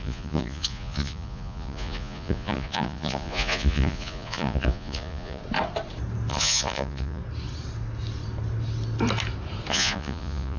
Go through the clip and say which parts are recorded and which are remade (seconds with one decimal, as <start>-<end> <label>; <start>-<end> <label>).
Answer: 0.0-5.4 remade; 5.4-6.3 recorded; 6.3-7.2 remade; 7.2-9.7 recorded; 9.7-10.6 remade